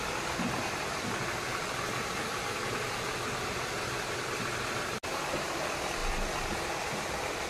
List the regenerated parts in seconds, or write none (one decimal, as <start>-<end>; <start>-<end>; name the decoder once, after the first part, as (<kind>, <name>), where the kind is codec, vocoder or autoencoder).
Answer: none